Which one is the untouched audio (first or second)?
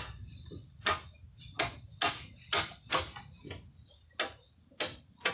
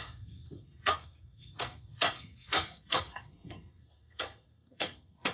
first